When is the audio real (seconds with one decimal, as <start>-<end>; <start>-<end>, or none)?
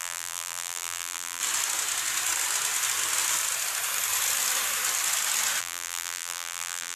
1.4-5.6